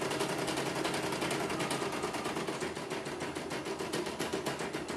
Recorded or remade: recorded